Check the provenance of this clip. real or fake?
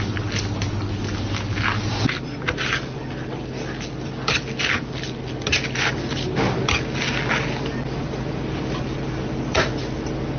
real